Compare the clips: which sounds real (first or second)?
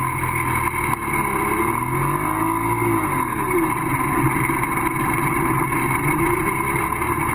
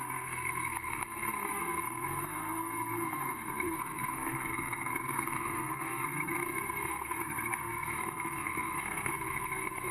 first